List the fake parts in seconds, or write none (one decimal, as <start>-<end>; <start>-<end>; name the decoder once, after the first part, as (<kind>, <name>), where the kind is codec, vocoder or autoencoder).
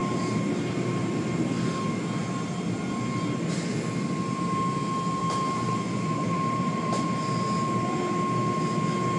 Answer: 0.0-1.0 (vocoder, BigVGAN v2); 5.2-7.2